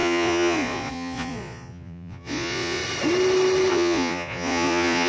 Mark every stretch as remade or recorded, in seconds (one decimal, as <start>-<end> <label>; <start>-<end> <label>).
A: 0.0-2.8 remade; 2.8-3.7 recorded; 3.7-5.1 remade